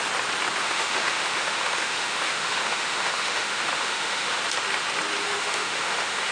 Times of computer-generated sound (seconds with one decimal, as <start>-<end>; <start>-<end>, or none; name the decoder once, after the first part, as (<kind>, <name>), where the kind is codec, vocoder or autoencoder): 0.6-4.4 (autoencoder, DAC-VAE); 5.2-6.3

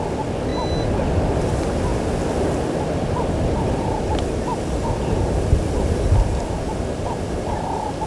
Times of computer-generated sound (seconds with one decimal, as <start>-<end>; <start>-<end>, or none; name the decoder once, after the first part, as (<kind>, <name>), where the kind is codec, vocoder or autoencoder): none

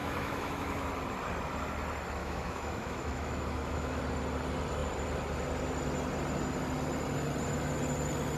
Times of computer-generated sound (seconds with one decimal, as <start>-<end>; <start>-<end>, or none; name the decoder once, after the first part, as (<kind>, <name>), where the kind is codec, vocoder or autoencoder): 0.0-0.9 (autoencoder, DAC-VAE); 2.2-4.0